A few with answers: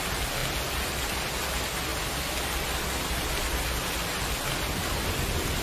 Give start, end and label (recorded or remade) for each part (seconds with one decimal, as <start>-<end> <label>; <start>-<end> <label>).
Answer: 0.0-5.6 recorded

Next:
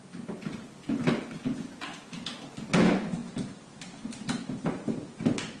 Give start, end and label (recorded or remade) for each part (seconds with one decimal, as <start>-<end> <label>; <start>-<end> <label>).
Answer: 0.0-5.6 recorded

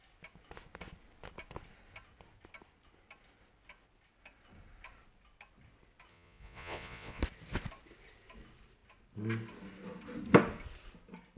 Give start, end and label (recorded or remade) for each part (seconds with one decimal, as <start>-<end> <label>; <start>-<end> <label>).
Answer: 0.0-6.1 recorded; 6.1-7.2 remade; 7.2-11.4 recorded

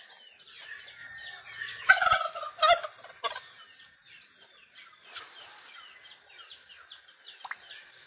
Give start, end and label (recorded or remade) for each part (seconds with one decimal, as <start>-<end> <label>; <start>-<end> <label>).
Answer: 0.0-8.1 recorded